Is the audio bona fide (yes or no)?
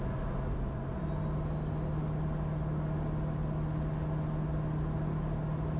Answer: yes